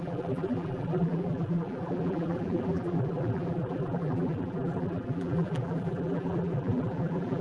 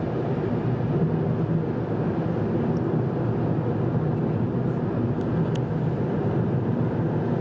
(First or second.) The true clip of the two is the second